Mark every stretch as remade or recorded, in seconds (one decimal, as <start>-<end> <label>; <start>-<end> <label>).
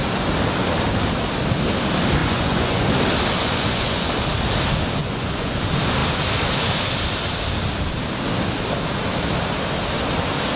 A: 0.0-2.2 recorded; 2.2-2.9 remade; 2.9-3.4 recorded; 3.4-4.1 remade; 4.1-5.0 recorded; 5.0-5.6 remade; 5.6-10.6 recorded